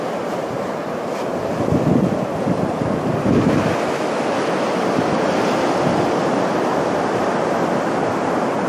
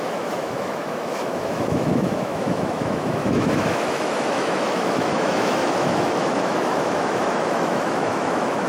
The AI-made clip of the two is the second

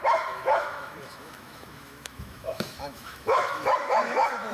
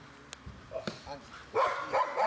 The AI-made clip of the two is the first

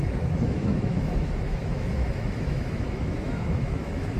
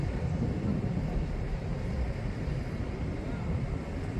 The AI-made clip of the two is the first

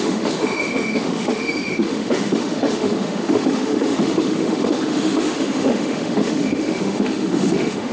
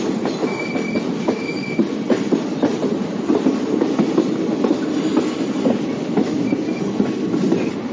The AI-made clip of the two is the first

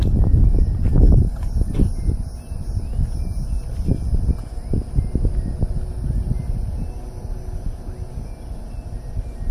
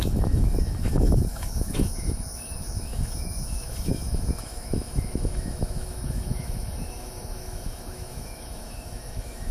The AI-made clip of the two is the second